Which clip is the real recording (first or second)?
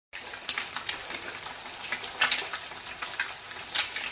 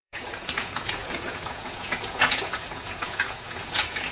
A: first